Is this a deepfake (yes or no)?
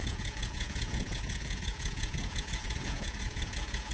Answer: yes